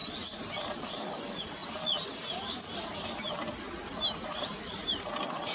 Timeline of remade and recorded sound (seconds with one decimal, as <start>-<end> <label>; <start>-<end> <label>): 0.0-5.5 recorded

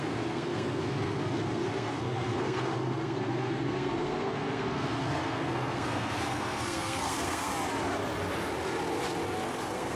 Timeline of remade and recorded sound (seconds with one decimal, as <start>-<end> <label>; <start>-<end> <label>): 0.0-7.5 remade; 7.5-9.6 recorded; 9.6-10.0 remade